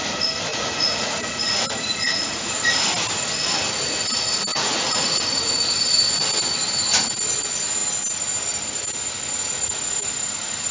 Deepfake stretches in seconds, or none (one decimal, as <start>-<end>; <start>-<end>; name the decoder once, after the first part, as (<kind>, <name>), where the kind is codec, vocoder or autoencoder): 0.5-2.5 (vocoder, Vocos); 4.5-5.5